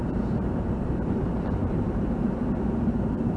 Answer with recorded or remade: remade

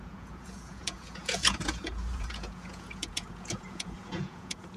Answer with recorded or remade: remade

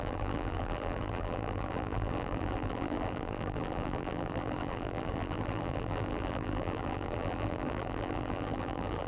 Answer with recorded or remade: remade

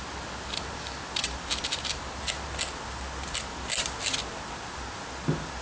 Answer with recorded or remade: recorded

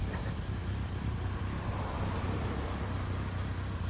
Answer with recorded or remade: recorded